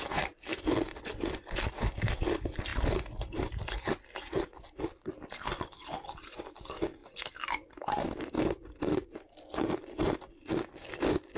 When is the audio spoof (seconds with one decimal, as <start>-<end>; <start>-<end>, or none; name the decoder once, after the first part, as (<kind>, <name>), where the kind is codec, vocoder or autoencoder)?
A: none